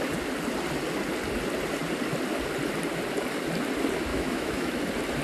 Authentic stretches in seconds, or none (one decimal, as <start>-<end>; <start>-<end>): 0.0-4.1; 4.8-5.2